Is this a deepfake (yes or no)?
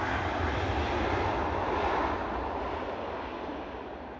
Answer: no